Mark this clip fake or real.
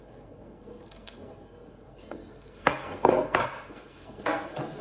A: fake